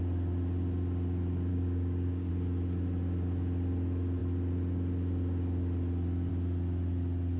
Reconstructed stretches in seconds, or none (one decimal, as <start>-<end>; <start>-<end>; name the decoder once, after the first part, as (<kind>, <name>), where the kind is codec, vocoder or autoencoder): 1.5-2.3 (codec, DAC)